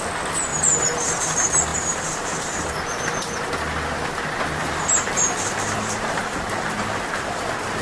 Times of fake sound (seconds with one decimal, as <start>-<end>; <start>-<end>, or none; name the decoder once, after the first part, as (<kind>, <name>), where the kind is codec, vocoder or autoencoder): 0.5-1.1 (vocoder, BigVGAN v2); 1.7-2.7; 4.6-7.8